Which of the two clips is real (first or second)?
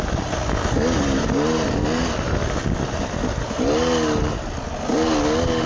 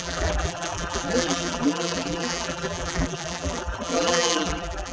first